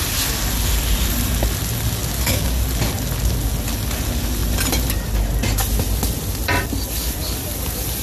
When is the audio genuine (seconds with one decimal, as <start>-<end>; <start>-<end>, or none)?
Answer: 0.0-2.1; 2.6-8.0